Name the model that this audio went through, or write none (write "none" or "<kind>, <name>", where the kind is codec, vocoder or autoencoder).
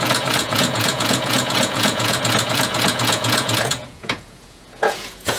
vocoder, Vocos